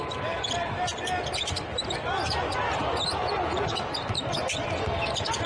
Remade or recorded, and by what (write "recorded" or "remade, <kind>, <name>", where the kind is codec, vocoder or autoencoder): recorded